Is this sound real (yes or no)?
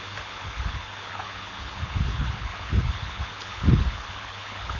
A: no